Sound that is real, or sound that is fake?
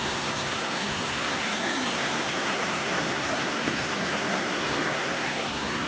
fake